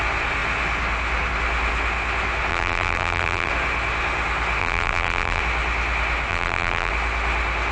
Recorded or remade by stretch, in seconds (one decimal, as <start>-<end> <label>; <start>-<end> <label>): 0.0-2.5 recorded; 2.5-3.5 remade; 3.5-4.6 recorded; 4.6-5.4 remade; 5.4-6.3 recorded; 6.3-6.9 remade; 6.9-7.7 recorded